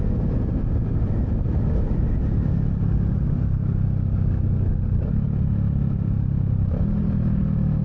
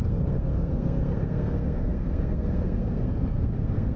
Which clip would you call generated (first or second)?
second